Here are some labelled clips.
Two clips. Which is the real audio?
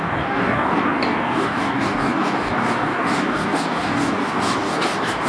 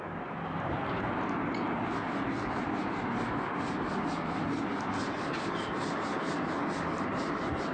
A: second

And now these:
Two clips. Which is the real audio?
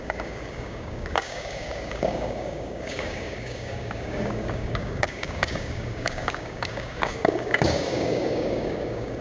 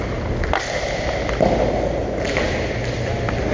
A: second